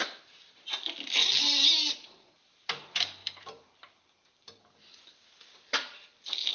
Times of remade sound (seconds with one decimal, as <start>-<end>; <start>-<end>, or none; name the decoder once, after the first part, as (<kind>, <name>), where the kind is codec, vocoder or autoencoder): 3.2-5.0 (vocoder, BigVGAN v2)